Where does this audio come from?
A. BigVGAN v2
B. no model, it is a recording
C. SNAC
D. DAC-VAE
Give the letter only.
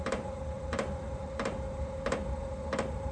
A